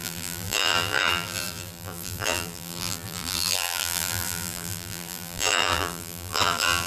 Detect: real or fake fake